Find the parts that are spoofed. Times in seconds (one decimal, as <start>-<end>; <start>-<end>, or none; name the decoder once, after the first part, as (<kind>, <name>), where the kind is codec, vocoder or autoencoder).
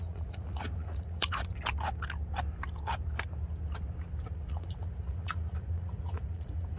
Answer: 0.0-1.5 (vocoder, Vocos); 4.5-6.8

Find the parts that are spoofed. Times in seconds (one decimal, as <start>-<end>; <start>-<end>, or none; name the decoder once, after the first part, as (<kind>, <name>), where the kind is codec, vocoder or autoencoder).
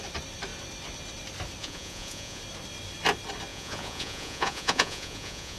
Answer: 1.6-2.4 (vocoder, Vocos); 3.5-5.6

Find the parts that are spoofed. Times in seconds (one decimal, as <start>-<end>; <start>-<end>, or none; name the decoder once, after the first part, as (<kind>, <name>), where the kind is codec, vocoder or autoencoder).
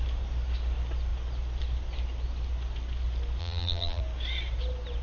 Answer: 3.4-4.0 (vocoder, BigVGAN v2)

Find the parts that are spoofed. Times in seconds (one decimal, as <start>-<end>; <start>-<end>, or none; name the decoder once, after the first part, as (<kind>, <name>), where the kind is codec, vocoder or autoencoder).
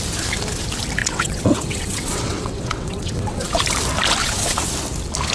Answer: 1.0-3.6 (vocoder, WaveNeXt); 4.2-4.7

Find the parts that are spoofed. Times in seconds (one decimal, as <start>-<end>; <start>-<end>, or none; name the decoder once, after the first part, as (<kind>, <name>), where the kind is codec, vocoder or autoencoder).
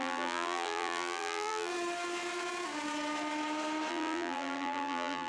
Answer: 0.0-1.7 (vocoder, BigVGAN v2); 3.9-5.3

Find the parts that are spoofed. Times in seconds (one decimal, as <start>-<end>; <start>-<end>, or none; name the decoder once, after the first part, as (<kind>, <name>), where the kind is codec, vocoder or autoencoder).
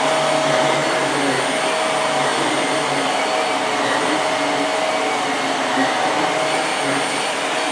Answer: none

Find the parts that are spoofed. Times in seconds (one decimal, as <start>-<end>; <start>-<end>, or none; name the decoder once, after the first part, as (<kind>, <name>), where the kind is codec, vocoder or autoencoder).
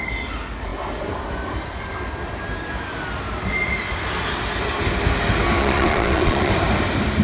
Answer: 5.6-6.5 (vocoder, Vocos)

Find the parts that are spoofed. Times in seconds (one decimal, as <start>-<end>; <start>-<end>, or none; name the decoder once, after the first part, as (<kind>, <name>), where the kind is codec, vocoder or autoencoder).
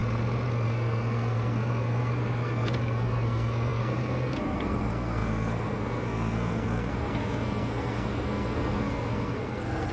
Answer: 0.5-9.9 (codec, SNAC)